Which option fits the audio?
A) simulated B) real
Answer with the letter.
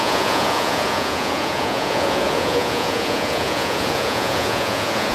A